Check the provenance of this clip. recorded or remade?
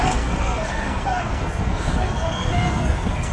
remade